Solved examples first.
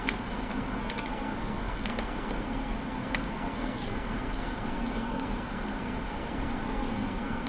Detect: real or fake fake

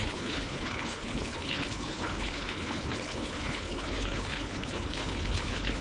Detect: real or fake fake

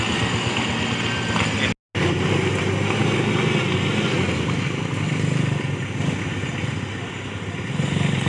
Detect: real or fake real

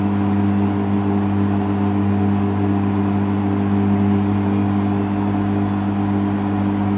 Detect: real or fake fake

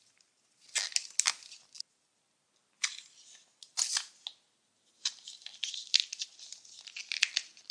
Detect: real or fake real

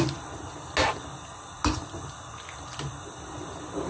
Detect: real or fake real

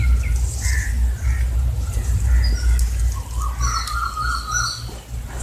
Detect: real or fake real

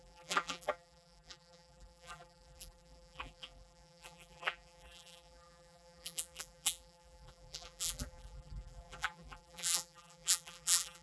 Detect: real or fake fake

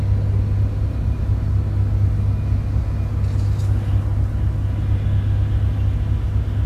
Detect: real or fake real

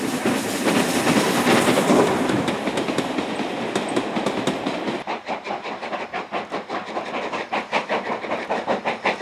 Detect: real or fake real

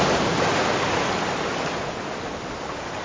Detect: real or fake real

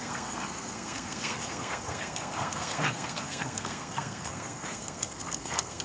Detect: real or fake fake